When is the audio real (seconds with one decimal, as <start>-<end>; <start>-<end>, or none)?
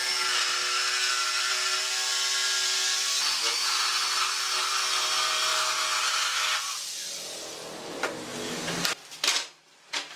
0.0-1.1; 2.1-3.2; 3.9-10.2